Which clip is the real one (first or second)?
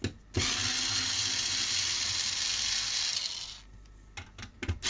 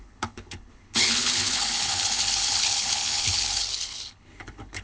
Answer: first